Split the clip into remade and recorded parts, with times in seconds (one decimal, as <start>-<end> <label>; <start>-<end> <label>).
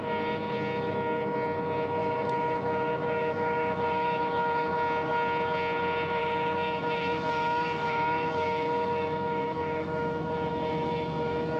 0.0-2.0 recorded; 2.0-4.7 remade; 4.7-6.2 recorded; 6.2-11.6 remade